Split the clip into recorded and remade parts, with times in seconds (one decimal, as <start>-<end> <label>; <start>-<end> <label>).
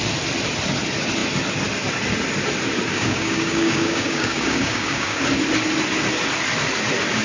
0.0-2.9 recorded; 2.9-5.2 remade; 5.2-7.2 recorded